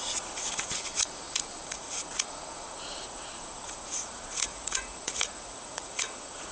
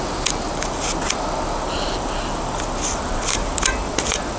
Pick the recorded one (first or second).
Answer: second